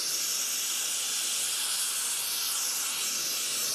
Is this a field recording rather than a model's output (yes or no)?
yes